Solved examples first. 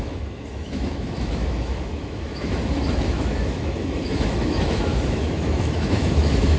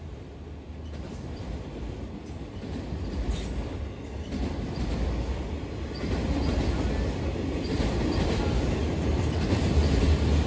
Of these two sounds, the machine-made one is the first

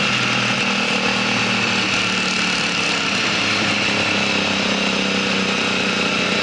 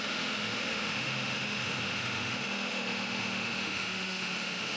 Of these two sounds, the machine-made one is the second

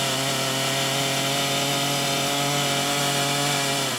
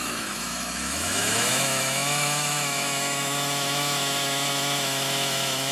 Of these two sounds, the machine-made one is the second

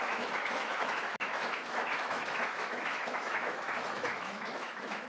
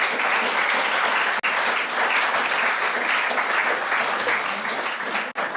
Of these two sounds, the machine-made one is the first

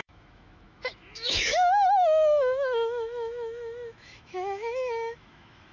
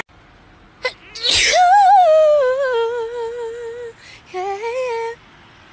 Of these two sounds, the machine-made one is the first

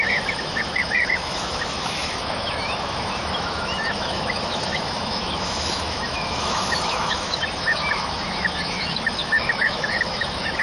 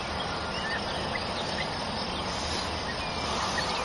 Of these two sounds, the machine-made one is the first